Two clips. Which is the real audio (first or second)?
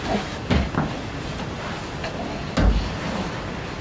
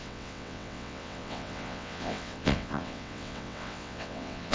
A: first